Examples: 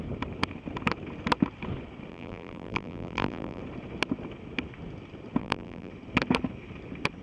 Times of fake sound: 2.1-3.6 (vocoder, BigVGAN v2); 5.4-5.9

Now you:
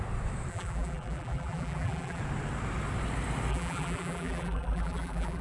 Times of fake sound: 0.5-2.2 (vocoder, BigVGAN v2); 3.5-5.4

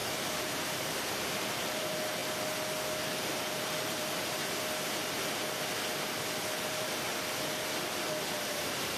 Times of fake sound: 0.0-2.2 (vocoder, BigVGAN v2); 3.0-4.4; 6.5-7.1; 8.4-9.0

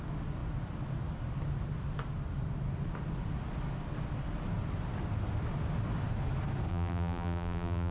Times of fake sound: 6.7-7.9 (vocoder, BigVGAN v2)

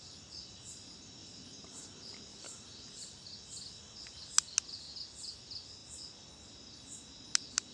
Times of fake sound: 1.2-1.8 (vocoder, BigVGAN v2); 2.3-3.3

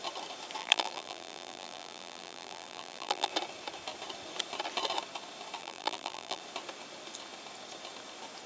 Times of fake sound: 0.6-3.3 (vocoder, BigVGAN v2); 5.6-6.4

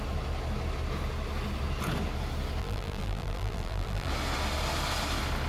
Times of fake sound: 2.6-4.1 (vocoder, BigVGAN v2)

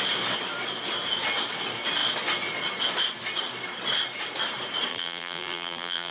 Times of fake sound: 4.9-6.1 (vocoder, BigVGAN v2)